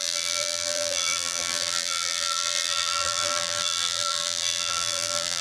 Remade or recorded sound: remade